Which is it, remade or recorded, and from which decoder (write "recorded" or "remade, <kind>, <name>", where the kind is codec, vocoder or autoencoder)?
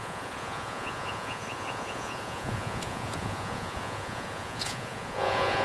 remade, vocoder, Vocos